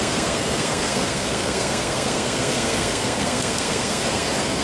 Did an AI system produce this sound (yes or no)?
yes